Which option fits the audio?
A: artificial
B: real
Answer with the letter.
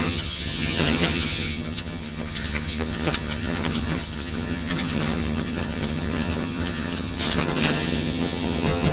A